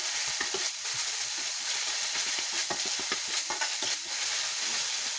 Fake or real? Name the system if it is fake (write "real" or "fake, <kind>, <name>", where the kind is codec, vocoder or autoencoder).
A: fake, vocoder, BigVGAN v2